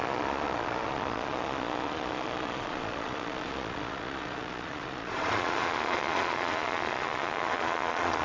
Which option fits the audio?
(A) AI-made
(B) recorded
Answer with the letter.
A